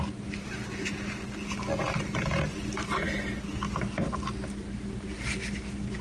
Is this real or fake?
real